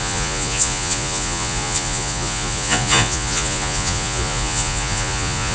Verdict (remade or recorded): remade